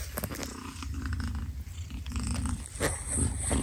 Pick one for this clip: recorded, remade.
recorded